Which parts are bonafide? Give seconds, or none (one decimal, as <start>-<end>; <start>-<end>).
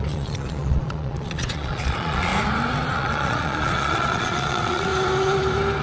2.3-2.9; 4.9-5.8